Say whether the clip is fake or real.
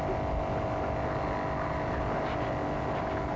real